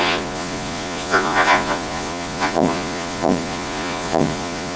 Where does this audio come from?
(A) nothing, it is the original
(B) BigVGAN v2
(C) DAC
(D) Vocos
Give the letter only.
D